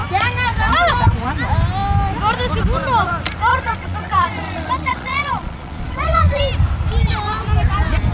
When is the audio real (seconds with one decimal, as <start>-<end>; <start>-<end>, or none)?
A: 0.0-3.5; 6.4-8.1